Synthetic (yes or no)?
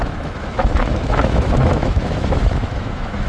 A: yes